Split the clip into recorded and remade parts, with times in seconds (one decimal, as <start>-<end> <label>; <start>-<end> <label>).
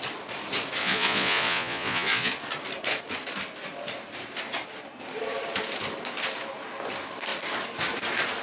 0.0-0.8 recorded; 0.8-2.3 remade; 2.3-8.4 recorded